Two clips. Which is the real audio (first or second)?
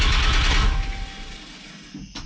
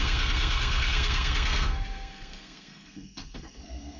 first